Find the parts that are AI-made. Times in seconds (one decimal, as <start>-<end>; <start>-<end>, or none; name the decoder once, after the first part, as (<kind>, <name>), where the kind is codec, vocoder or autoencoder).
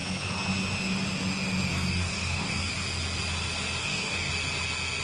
1.7-2.7 (codec, DAC); 3.8-4.3